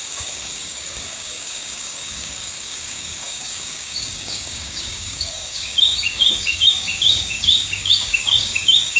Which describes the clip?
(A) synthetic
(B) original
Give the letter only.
A